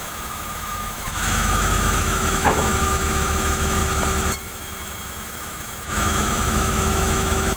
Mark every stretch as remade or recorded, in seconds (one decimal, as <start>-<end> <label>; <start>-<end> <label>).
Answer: 0.0-3.8 remade; 3.8-4.4 recorded; 4.4-7.6 remade